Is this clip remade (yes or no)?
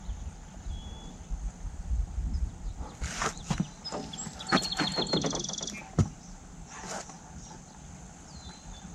no